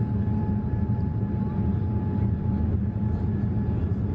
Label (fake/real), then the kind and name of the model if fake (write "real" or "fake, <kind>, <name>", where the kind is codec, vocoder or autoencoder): real